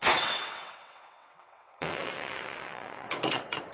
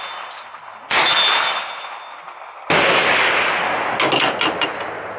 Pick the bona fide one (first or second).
second